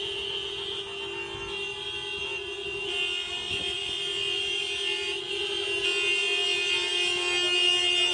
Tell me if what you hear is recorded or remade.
recorded